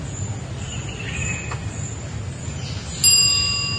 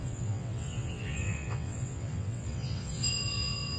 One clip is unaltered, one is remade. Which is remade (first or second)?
second